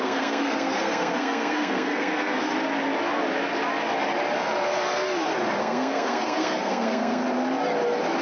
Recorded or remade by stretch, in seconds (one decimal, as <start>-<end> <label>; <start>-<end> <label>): 0.0-2.5 remade; 2.5-5.6 recorded; 5.6-7.2 remade; 7.2-8.2 recorded